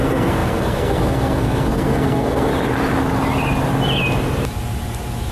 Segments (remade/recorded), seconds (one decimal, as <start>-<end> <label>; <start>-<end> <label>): 0.0-2.5 remade; 2.5-5.3 recorded